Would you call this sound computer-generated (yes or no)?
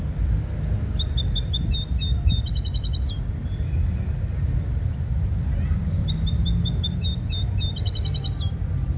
no